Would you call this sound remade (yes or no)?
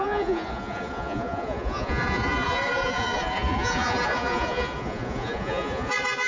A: yes